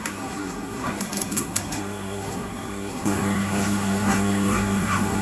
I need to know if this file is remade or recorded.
remade